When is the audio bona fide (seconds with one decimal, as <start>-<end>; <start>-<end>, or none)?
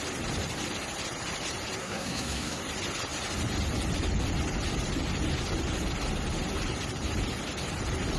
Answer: 0.0-1.8; 2.6-8.2